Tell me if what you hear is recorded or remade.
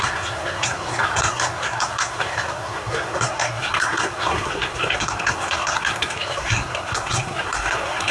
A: remade